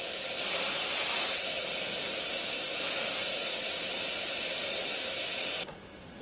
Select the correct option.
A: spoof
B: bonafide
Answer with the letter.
B